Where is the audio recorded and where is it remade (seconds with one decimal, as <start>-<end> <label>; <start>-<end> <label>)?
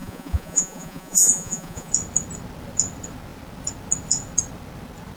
0.0-1.9 remade; 1.9-5.2 recorded